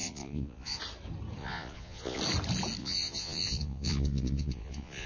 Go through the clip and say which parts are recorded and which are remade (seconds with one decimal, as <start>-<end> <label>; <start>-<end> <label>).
0.0-0.8 remade; 0.8-1.4 recorded; 1.4-2.2 remade; 2.2-2.8 recorded; 2.8-5.1 remade

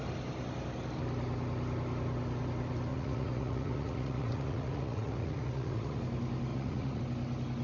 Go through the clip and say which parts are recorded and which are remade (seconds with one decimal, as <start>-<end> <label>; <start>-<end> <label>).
0.0-2.9 recorded; 2.9-6.0 remade; 6.0-6.5 recorded; 6.5-7.0 remade; 7.0-7.6 recorded

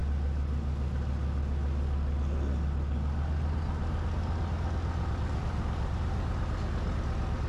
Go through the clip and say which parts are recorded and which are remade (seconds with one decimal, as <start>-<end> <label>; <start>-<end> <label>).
0.0-7.5 recorded

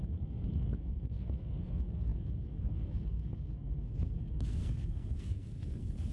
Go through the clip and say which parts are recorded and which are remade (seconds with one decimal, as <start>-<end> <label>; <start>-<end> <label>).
0.0-6.1 remade

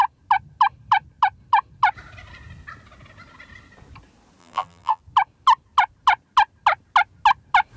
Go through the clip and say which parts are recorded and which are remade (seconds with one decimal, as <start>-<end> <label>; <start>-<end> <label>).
0.0-4.4 recorded; 4.4-5.0 remade; 5.0-7.8 recorded

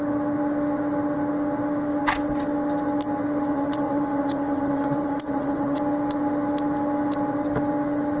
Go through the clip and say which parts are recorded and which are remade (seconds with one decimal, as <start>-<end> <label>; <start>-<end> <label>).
0.0-3.5 recorded; 3.5-5.8 remade; 5.8-8.2 recorded

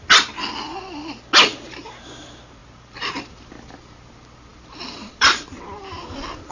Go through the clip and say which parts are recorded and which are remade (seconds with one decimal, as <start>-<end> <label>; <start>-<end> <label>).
0.0-4.5 recorded; 4.5-5.5 remade; 5.5-6.5 recorded